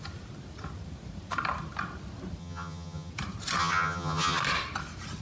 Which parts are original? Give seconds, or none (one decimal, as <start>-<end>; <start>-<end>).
0.0-2.4; 3.1-3.6; 4.4-5.2